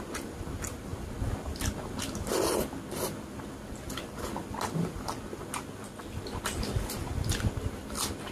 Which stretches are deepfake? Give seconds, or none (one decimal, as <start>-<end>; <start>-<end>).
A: none

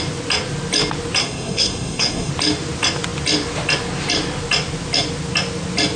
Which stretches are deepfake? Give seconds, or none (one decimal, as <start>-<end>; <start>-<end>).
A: 1.2-2.3

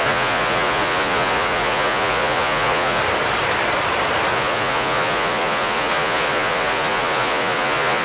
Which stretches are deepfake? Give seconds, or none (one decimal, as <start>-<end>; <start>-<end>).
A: 0.0-3.0; 4.3-8.0

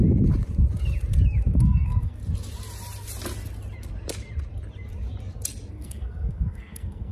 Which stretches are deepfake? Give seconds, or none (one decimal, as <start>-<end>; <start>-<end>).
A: 1.5-2.2; 5.7-7.1

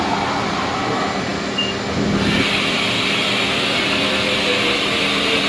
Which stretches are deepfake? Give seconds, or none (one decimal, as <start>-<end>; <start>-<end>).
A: none

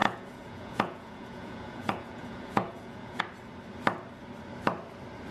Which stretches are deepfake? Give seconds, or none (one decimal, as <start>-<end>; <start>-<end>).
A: 0.0-3.2

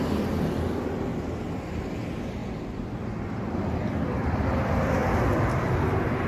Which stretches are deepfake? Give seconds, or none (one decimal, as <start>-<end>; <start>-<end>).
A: 0.0-2.4; 4.4-6.3